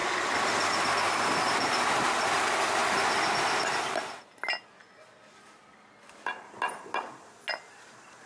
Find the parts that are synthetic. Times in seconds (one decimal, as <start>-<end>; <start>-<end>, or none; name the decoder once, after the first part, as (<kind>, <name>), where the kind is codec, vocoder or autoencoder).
none